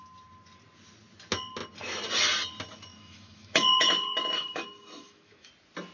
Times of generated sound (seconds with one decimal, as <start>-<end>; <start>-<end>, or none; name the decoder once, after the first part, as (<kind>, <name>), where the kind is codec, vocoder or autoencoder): 2.9-5.5 (autoencoder, DAC-VAE)